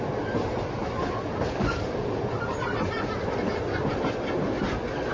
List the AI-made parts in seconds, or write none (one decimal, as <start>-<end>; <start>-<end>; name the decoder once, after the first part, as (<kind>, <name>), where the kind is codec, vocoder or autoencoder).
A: none